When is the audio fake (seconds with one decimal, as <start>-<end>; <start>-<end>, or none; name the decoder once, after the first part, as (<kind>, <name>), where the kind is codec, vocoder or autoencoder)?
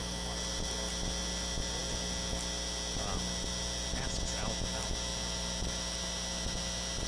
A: none